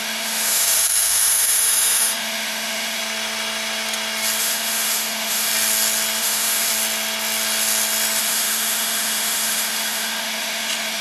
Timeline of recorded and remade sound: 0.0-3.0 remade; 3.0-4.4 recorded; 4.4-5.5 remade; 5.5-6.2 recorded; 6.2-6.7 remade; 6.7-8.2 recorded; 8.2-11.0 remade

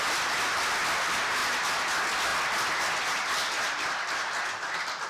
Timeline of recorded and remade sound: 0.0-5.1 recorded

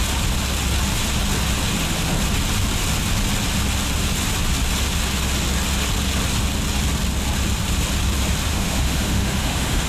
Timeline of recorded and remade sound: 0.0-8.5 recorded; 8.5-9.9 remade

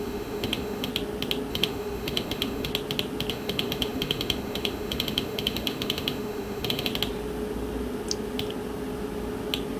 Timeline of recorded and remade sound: 0.0-0.9 remade; 0.9-1.5 recorded; 1.5-2.7 remade; 2.7-3.3 recorded; 3.3-6.9 remade; 6.9-9.8 recorded

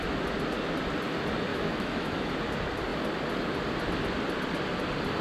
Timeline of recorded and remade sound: 0.0-1.5 recorded; 1.5-2.3 remade; 2.3-5.2 recorded